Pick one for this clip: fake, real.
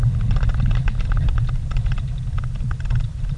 real